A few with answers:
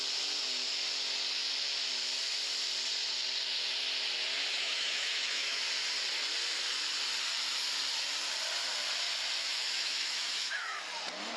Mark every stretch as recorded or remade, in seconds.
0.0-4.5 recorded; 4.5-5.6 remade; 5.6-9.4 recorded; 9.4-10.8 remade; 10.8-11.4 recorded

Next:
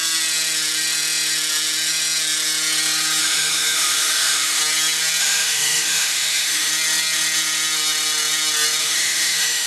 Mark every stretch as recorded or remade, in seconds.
0.0-3.2 recorded; 3.2-4.6 remade; 4.6-5.2 recorded; 5.2-6.7 remade; 6.7-8.8 recorded; 8.8-9.7 remade

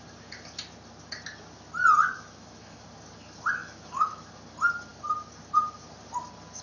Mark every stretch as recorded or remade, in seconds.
0.0-2.1 recorded; 2.1-2.8 remade; 2.8-3.6 recorded; 3.6-4.3 remade; 4.3-6.6 recorded